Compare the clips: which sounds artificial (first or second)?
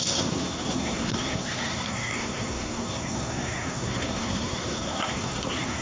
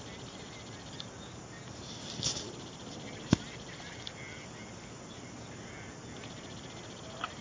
first